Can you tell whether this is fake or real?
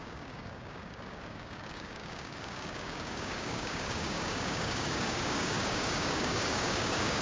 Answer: fake